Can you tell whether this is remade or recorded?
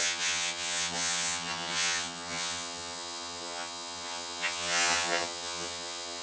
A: remade